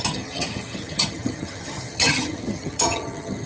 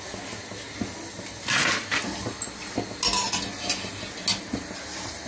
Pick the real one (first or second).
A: second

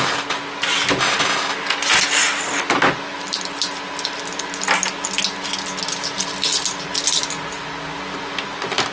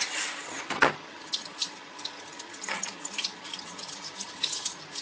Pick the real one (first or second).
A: first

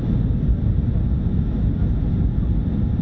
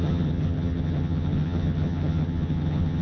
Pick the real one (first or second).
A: first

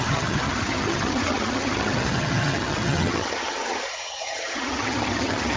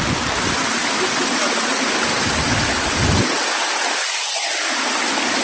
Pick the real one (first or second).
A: second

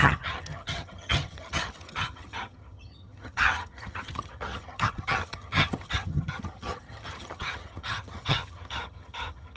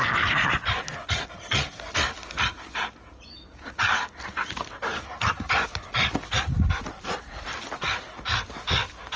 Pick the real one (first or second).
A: second